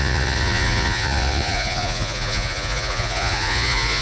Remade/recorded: remade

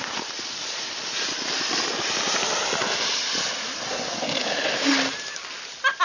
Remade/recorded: recorded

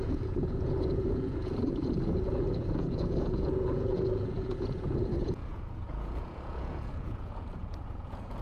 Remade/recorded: remade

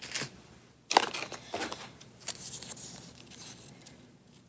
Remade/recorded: recorded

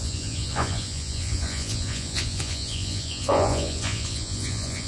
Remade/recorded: remade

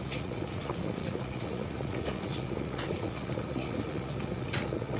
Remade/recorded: remade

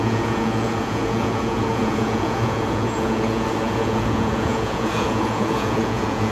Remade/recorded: remade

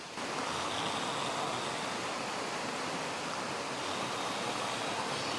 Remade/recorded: recorded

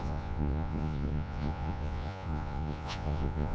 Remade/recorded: remade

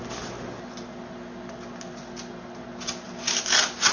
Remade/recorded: recorded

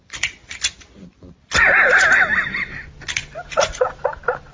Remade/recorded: recorded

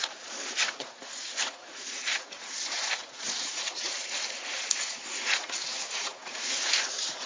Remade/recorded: remade